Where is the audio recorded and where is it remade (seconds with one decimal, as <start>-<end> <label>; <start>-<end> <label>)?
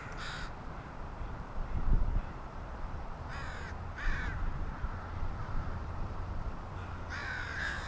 0.0-3.3 remade; 3.3-5.4 recorded; 5.4-7.9 remade